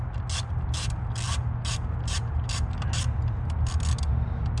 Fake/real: real